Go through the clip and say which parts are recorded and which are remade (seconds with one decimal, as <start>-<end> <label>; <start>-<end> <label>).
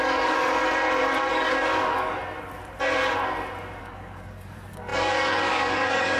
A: 0.0-0.6 remade; 0.6-1.3 recorded; 1.3-2.2 remade; 2.2-3.8 recorded; 3.8-6.2 remade